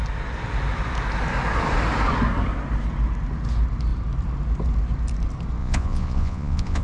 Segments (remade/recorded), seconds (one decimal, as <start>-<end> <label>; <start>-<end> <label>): 0.0-5.6 recorded; 5.6-6.8 remade